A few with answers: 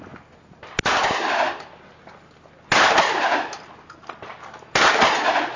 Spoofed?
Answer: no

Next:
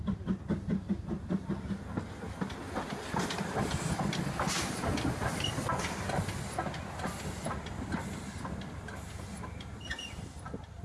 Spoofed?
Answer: no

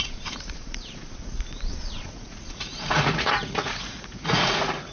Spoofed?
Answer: yes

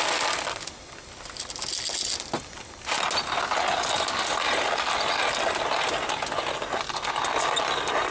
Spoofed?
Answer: no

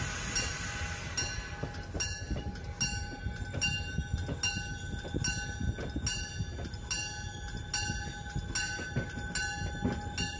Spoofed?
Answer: no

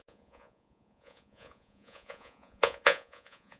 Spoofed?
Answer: yes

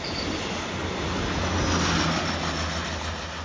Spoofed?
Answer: no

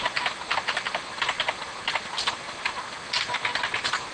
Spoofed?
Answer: no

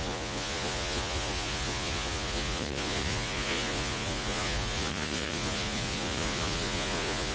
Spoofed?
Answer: yes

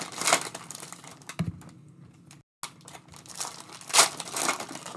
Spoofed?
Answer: no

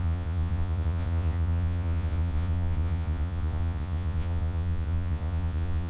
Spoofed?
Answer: yes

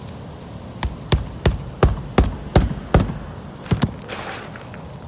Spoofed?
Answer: no